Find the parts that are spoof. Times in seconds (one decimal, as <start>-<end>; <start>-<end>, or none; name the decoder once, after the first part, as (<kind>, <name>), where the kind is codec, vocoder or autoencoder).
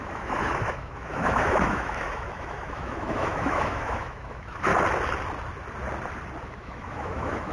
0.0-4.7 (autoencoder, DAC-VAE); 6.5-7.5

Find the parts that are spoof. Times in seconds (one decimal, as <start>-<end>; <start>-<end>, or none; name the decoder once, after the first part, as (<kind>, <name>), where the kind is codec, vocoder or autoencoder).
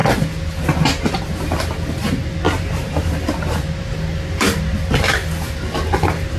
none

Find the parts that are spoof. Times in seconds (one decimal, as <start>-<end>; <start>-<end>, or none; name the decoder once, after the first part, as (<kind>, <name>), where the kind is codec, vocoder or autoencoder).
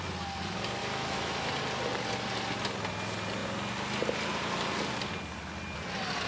0.8-1.5 (autoencoder, DAC-VAE)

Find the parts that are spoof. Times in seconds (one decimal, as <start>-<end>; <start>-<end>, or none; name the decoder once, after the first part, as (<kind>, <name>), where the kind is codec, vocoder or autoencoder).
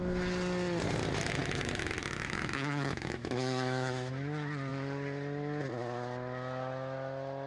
1.4-4.1 (autoencoder, DAC-VAE)